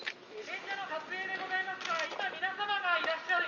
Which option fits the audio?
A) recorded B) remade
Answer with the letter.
A